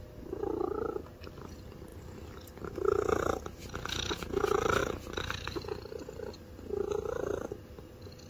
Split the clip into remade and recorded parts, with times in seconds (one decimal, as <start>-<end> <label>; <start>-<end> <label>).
0.0-8.3 recorded

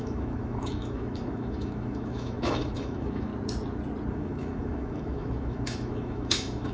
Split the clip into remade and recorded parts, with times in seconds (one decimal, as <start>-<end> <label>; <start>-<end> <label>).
0.0-3.3 remade; 3.3-4.1 recorded; 4.1-6.7 remade

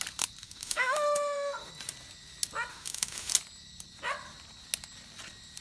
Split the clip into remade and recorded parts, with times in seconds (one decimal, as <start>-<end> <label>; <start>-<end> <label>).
0.0-0.4 recorded; 0.4-1.7 remade; 1.7-2.7 recorded; 2.7-3.3 remade; 3.3-5.6 recorded

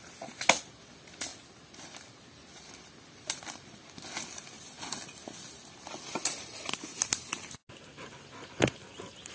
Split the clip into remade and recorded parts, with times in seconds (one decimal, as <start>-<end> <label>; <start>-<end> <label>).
0.0-9.3 recorded

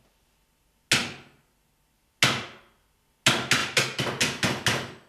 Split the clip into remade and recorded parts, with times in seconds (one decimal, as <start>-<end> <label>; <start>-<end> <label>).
0.0-5.1 recorded

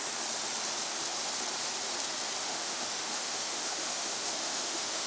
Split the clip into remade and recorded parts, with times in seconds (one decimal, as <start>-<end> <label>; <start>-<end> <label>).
0.0-2.4 recorded; 2.4-5.1 remade